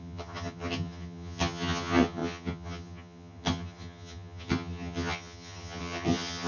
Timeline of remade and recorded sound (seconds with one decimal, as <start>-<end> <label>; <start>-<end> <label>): 0.0-6.5 remade